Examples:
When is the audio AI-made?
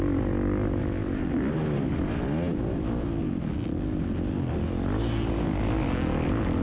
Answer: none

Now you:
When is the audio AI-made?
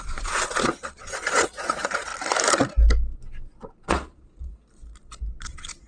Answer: 0.0-2.1 (vocoder, Vocos); 3.9-4.5; 5.4-5.9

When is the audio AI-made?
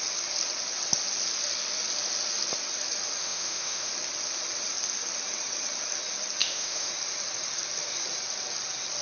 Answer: 3.2-3.9 (autoencoder, DAC-VAE); 6.4-6.9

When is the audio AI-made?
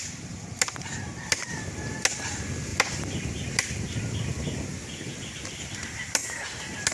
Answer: none